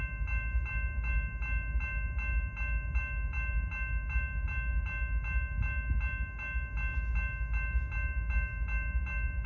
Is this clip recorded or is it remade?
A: recorded